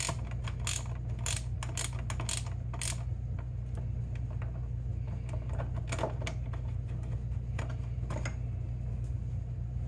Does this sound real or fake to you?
real